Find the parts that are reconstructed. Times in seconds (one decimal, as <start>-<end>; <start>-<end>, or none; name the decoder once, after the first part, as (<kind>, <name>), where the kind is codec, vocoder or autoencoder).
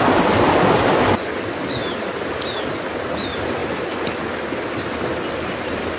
none